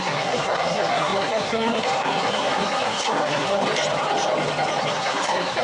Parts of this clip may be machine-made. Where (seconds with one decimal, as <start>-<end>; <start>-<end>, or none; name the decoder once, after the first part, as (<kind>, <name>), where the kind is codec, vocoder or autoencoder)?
0.0-3.6 (codec, SNAC); 4.8-5.6